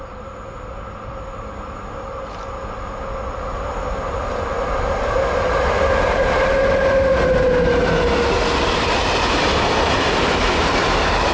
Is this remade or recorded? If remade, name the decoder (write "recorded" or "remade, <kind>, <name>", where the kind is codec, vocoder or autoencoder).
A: recorded